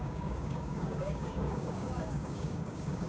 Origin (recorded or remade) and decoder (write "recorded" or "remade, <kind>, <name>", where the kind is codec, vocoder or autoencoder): remade, codec, DAC